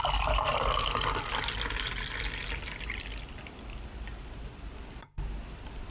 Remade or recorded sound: recorded